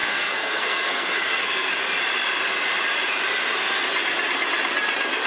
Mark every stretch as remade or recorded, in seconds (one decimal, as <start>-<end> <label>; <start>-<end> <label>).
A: 0.0-1.7 remade; 1.7-5.3 recorded